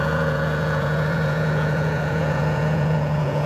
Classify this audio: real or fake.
fake